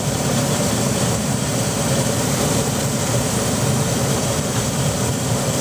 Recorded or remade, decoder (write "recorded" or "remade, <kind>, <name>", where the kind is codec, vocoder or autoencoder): remade, vocoder, BigVGAN v2